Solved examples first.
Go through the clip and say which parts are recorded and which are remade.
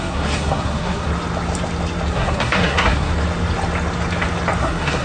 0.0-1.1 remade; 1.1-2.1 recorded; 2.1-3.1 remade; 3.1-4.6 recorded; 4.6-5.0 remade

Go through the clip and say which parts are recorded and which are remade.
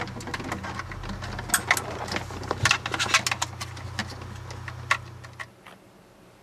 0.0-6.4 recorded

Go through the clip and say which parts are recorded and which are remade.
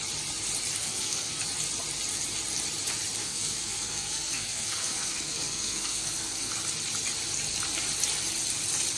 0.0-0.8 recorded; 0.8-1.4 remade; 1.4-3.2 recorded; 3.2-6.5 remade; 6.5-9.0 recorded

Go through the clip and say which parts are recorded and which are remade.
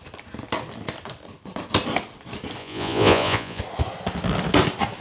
0.0-2.6 recorded; 2.6-3.6 remade; 3.6-5.0 recorded